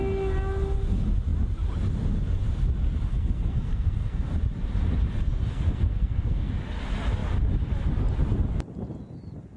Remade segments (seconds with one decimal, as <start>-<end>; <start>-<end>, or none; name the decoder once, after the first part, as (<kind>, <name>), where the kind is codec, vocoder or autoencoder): 3.1-4.3 (codec, SNAC); 5.5-6.5